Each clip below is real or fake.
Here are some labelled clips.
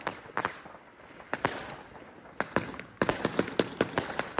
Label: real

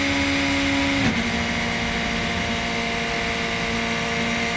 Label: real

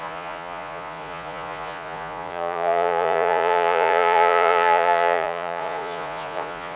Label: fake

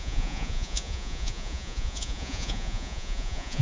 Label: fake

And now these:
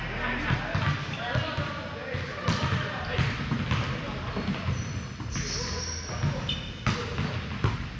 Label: real